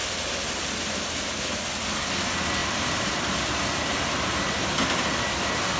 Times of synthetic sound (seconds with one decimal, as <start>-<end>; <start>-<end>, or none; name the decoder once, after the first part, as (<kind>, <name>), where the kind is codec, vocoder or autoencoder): 0.0-1.5 (vocoder, BigVGAN v2); 2.6-5.8